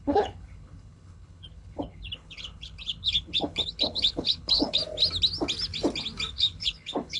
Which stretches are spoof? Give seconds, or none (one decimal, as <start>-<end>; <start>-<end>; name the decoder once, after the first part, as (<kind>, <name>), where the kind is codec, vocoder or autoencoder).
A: 0.0-4.8 (codec, HILCodec); 6.3-7.2